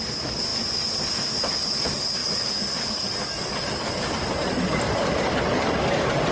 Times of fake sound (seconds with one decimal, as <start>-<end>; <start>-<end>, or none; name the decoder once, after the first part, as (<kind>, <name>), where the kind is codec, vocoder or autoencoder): none